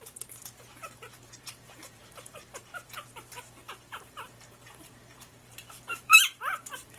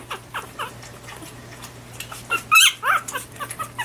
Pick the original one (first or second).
second